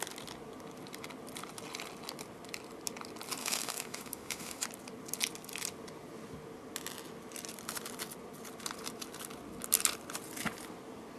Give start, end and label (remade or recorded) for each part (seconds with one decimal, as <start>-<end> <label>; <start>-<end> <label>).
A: 0.0-3.4 recorded; 3.4-4.6 remade; 4.6-11.2 recorded